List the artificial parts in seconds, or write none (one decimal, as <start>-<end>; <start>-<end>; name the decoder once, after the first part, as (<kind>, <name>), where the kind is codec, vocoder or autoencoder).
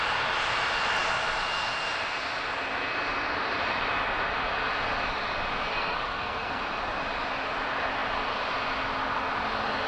5.7-6.6 (codec, SNAC)